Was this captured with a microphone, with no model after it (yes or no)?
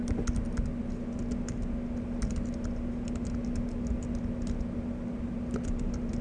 yes